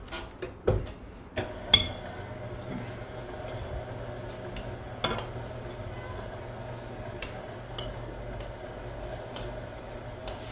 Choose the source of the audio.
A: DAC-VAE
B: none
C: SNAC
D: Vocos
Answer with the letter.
B